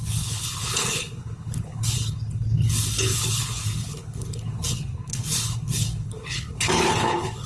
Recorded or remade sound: remade